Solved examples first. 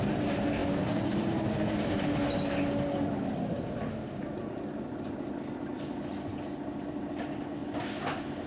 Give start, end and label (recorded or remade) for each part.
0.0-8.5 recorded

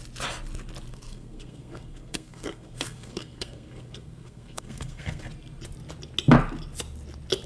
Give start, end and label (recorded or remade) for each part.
0.0-0.9 recorded; 0.9-5.2 remade; 5.2-7.5 recorded

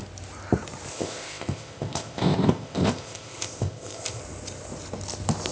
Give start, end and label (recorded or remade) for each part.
0.0-0.9 recorded; 0.9-4.2 remade; 4.2-5.5 recorded

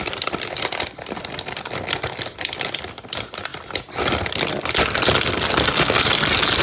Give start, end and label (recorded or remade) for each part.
0.0-6.6 recorded